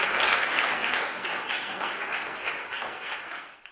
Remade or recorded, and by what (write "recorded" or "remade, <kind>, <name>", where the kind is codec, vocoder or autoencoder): remade, codec, SNAC